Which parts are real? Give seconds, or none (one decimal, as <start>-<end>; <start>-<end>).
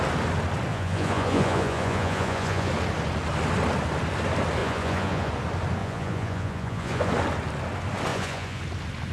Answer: 0.0-0.7; 2.7-4.6; 5.3-5.8; 7.1-8.1; 8.6-9.1